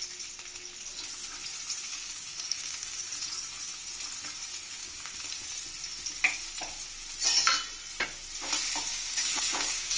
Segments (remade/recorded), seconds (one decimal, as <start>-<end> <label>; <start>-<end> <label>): 0.0-1.9 recorded; 1.9-3.1 remade; 3.1-4.8 recorded; 4.8-5.4 remade; 5.4-8.9 recorded; 8.9-10.0 remade